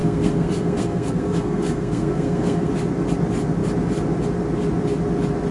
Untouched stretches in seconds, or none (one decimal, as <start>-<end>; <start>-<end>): 2.7-5.5